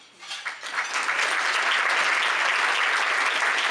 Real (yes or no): yes